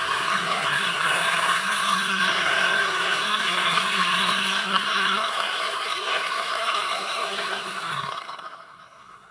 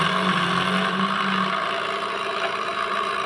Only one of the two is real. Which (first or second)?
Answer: second